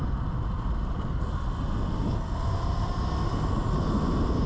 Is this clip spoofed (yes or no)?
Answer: no